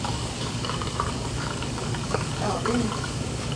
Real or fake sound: fake